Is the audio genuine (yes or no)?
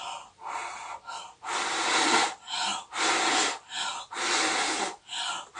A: yes